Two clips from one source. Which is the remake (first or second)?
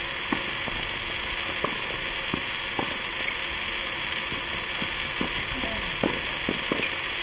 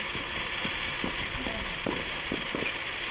second